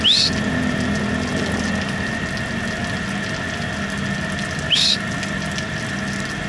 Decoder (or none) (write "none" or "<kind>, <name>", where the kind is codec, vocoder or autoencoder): none